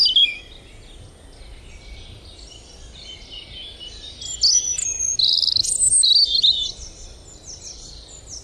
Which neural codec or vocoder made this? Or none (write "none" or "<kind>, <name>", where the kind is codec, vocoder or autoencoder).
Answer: none